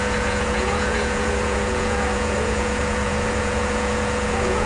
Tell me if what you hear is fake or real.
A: fake